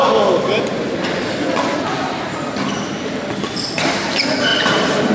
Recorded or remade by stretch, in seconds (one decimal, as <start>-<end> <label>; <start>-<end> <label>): 0.0-5.1 recorded